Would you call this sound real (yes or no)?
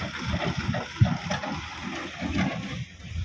yes